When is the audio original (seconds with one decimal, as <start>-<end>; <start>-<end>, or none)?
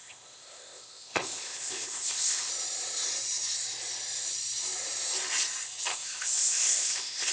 2.5-5.9